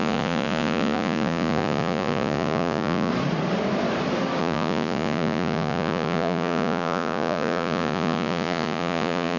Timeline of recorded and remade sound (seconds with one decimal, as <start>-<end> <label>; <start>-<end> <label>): 0.0-3.1 remade; 3.1-4.4 recorded; 4.4-9.4 remade